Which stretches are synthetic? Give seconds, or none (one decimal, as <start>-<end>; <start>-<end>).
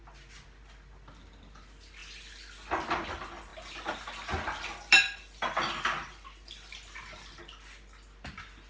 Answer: none